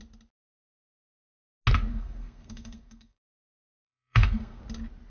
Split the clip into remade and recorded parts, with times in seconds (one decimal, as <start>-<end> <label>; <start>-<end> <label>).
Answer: 0.0-1.9 recorded; 1.9-4.6 remade; 4.6-5.1 recorded